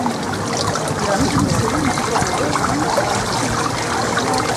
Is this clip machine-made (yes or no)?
no